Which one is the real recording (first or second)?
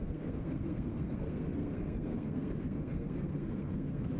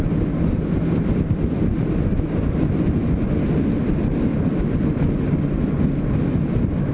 second